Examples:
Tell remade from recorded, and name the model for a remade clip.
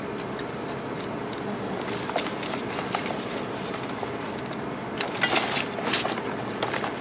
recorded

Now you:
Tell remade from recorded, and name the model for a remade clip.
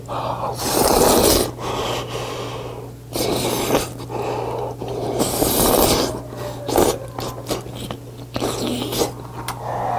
recorded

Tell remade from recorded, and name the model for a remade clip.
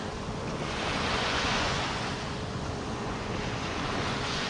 remade, vocoder, Vocos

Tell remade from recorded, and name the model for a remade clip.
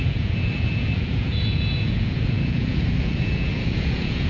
remade, vocoder, Vocos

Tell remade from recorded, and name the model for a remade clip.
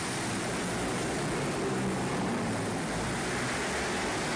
recorded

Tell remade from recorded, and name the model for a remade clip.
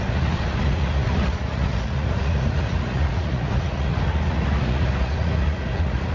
remade, vocoder, Vocos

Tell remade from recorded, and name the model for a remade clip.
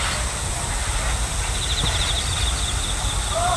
recorded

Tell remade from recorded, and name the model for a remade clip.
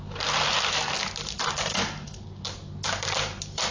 recorded